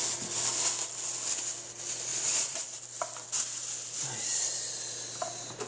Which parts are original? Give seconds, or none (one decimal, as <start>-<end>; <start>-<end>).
0.0-2.1; 2.8-5.7